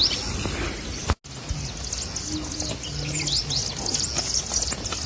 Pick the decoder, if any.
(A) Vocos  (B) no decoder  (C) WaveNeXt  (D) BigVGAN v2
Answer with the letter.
B